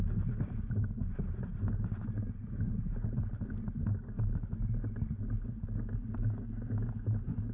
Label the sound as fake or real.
real